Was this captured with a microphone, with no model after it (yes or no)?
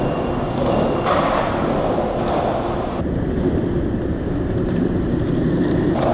yes